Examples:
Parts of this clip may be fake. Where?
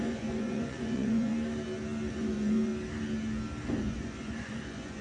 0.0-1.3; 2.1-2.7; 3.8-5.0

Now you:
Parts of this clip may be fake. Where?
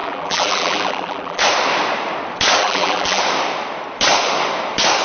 0.0-1.4; 2.6-3.2